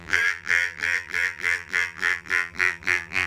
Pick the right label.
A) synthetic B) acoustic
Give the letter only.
A